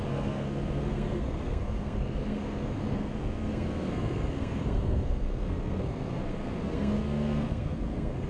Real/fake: fake